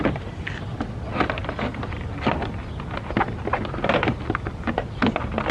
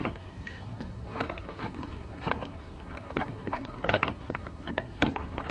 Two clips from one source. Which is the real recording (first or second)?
first